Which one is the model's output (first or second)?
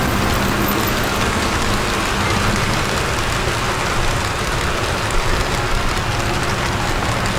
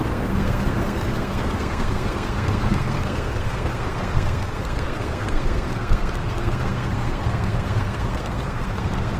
second